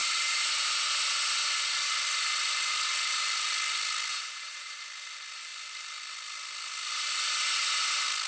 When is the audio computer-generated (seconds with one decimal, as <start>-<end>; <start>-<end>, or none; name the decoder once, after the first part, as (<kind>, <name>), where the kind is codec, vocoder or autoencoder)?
4.1-4.8 (vocoder, Vocos)